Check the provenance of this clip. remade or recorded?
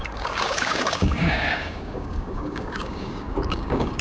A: remade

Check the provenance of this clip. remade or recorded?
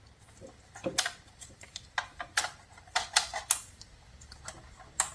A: recorded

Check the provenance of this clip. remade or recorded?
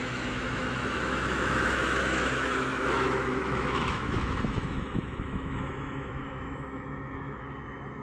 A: remade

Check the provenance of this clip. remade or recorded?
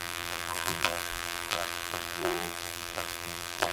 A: remade